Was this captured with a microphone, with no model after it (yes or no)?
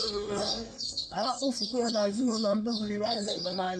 no